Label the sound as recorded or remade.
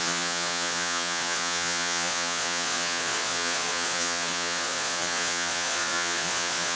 remade